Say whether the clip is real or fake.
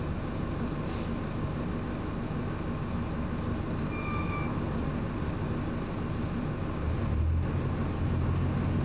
real